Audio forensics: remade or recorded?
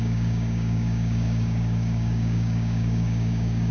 remade